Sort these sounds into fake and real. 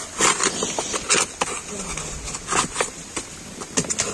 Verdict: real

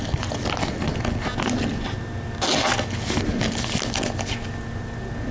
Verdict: real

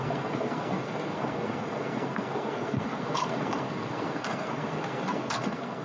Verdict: fake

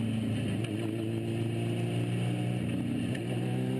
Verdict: real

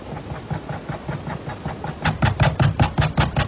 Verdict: real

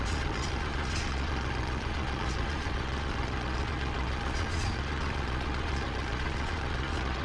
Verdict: fake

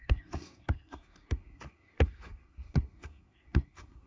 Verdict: fake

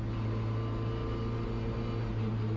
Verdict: real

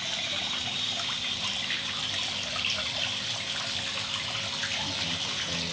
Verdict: real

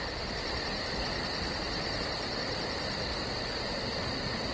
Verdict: real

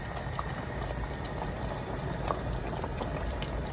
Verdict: real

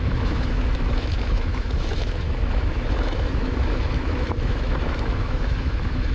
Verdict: fake